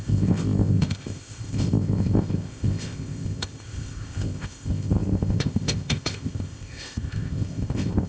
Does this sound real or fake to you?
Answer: fake